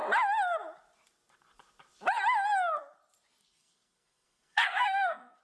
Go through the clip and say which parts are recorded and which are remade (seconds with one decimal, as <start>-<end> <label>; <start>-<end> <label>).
0.0-3.4 recorded; 3.4-5.4 remade